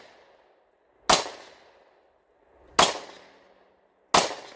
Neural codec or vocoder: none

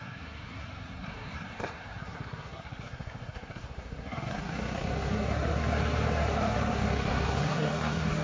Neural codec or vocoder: codec, SNAC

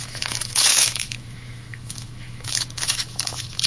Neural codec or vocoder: autoencoder, DAC-VAE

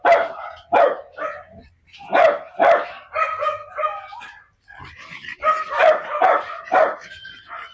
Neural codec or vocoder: none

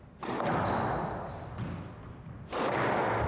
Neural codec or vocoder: none